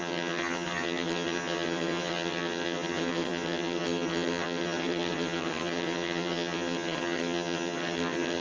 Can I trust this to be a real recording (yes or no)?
no